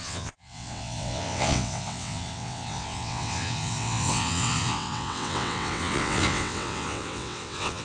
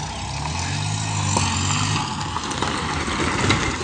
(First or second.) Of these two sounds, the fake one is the first